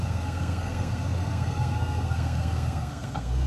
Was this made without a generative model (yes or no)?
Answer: no